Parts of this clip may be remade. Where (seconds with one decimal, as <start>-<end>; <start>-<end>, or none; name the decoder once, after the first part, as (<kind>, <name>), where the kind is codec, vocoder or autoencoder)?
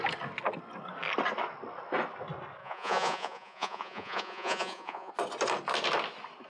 2.6-5.1 (vocoder, Vocos)